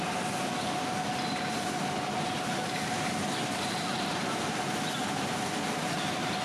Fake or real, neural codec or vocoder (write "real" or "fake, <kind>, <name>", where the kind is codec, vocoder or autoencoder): real